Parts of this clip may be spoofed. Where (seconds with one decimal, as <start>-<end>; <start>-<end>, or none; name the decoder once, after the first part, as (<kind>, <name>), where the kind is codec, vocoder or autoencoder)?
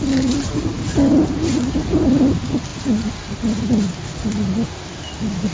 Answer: none